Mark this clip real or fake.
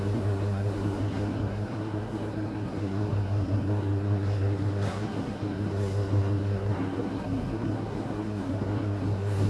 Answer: fake